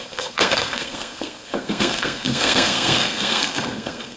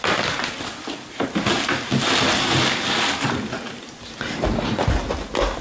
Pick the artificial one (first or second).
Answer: first